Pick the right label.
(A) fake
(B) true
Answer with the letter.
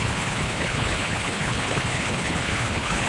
A